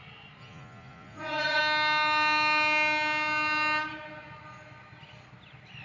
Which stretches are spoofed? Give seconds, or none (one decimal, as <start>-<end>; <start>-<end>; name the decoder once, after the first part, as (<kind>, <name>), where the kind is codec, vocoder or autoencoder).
0.4-1.6 (vocoder, Vocos)